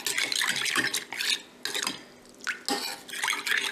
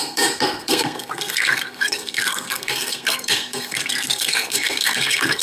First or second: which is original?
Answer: first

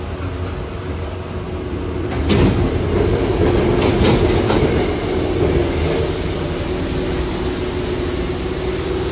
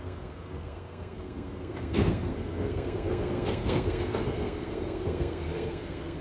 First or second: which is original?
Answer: first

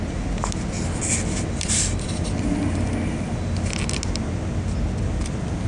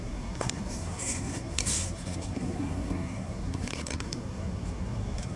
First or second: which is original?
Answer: first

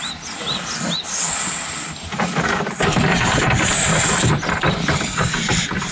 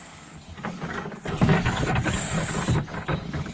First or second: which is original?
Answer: first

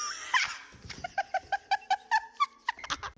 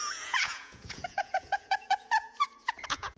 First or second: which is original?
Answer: first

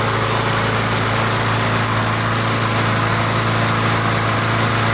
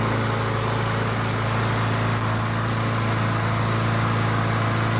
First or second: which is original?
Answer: second